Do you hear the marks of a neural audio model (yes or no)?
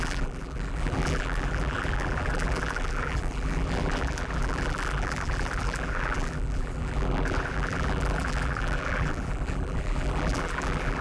yes